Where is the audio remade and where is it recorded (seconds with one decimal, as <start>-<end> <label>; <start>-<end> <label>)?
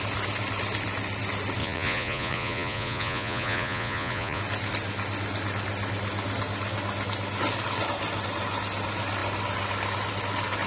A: 0.0-1.6 recorded; 1.6-4.4 remade; 4.4-10.7 recorded